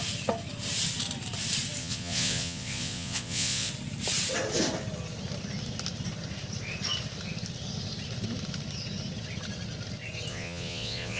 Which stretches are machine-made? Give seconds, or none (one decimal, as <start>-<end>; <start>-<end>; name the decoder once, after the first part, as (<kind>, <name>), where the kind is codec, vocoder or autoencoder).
1.8-3.7 (vocoder, Vocos); 10.3-11.2

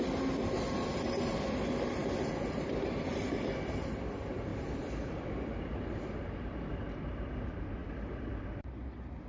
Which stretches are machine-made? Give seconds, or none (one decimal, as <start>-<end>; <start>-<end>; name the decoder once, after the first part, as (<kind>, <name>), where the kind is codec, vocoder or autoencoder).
2.0-3.1 (vocoder, BigVGAN v2); 4.5-5.3; 7.8-8.4

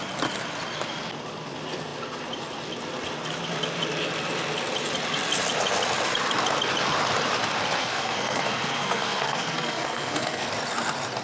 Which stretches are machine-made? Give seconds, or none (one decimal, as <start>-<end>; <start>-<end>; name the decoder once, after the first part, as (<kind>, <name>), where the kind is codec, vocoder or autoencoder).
7.8-10.5 (codec, SNAC)

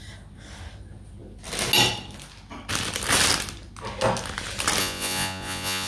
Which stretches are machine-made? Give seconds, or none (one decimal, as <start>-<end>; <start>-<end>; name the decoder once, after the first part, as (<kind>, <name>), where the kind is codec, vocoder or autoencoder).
4.8-5.9 (vocoder, Vocos)